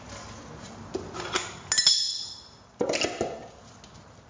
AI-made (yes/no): no